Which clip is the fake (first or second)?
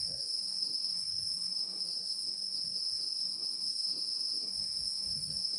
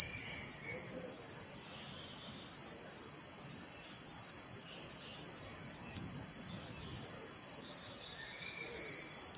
first